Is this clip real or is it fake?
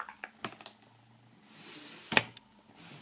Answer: real